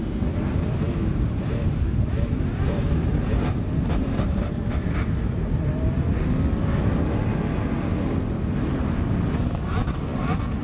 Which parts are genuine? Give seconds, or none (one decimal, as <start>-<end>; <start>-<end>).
0.0-1.1; 6.1-7.9; 9.0-10.6